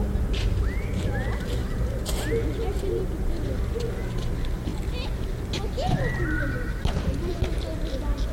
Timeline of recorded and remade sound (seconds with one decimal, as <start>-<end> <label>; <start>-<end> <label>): 0.0-8.3 recorded